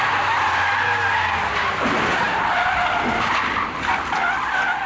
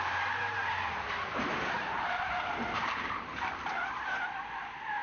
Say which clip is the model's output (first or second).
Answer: second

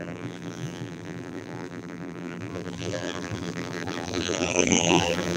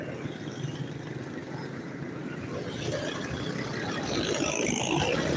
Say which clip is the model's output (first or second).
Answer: first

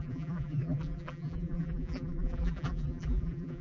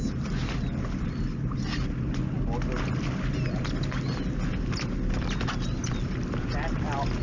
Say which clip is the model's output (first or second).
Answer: first